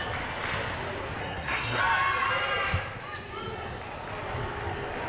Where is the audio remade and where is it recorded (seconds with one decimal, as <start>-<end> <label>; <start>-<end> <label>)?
0.0-1.2 recorded; 1.2-1.8 remade; 1.8-5.1 recorded